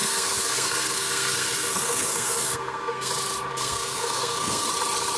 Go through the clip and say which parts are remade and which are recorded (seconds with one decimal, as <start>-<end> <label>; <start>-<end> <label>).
0.0-3.1 remade; 3.1-3.5 recorded; 3.5-4.7 remade; 4.7-5.2 recorded